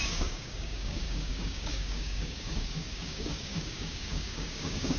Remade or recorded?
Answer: remade